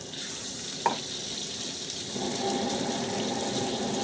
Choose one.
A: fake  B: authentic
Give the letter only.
B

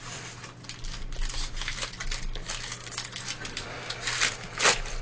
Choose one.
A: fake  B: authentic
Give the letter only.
B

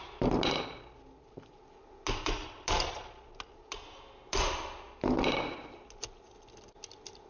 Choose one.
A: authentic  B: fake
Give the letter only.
A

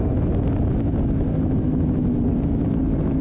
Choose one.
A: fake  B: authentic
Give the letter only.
B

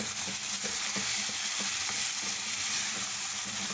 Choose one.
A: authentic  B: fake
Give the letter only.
A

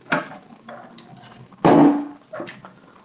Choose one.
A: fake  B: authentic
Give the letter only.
B